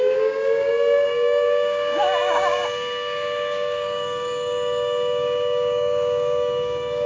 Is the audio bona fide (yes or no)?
no